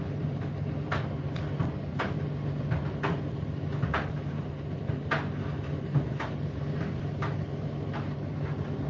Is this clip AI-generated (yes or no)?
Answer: no